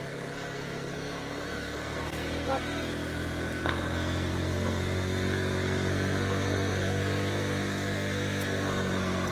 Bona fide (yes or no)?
no